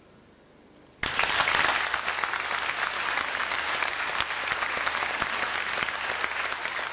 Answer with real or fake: real